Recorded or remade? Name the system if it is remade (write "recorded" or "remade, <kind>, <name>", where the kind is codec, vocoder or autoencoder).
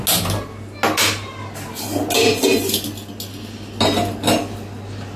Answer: recorded